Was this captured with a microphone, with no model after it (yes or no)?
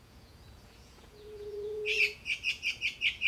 no